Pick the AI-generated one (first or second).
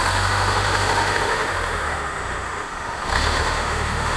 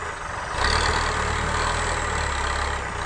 first